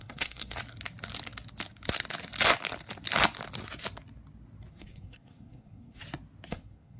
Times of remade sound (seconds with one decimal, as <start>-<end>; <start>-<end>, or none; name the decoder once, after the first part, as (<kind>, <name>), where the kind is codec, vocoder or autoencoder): 0.0-0.6 (codec, SNAC); 4.7-6.0; 6.5-7.0